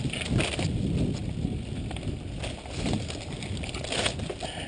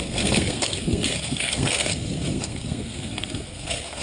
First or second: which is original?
first